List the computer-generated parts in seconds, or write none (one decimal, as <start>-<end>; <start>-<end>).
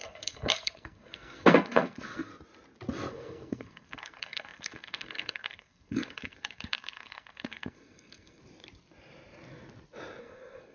0.0-2.3; 3.1-8.4; 10.2-10.7